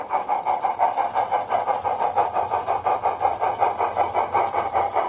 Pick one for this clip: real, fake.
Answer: real